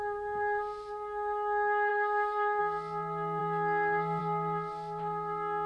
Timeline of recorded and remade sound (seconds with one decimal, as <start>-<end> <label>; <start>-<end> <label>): 0.0-1.9 recorded; 1.9-2.6 remade; 2.6-5.7 recorded